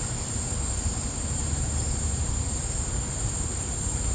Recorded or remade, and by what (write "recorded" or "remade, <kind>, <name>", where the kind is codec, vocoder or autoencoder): remade, vocoder, BigVGAN v2